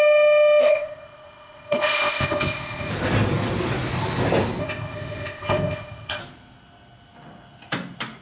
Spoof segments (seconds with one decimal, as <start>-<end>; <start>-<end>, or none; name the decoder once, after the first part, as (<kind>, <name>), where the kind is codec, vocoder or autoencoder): 0.6-2.9 (codec, ZipCodec); 4.6-6.2